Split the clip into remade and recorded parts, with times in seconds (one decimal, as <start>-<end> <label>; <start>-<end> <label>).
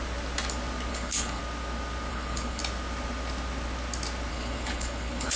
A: 0.0-0.9 recorded; 0.9-1.4 remade; 1.4-2.1 recorded; 2.1-2.6 remade; 2.6-4.3 recorded; 4.3-5.4 remade